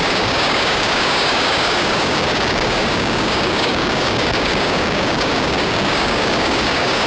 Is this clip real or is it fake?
fake